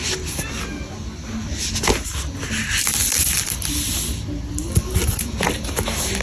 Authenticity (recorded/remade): recorded